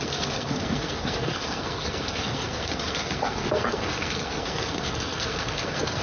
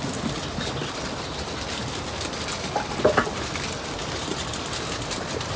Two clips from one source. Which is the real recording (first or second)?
second